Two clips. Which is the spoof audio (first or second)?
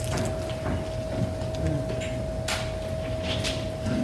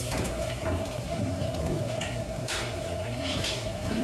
second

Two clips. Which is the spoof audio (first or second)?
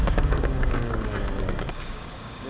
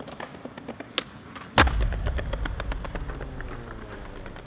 first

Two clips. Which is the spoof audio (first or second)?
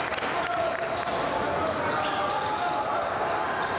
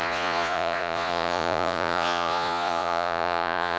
second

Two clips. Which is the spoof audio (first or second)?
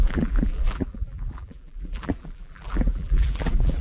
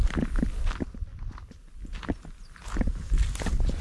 first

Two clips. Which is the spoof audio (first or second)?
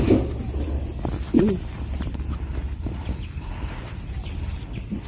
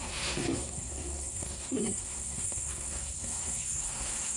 second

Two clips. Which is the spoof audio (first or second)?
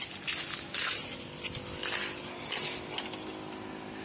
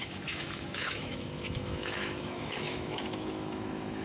second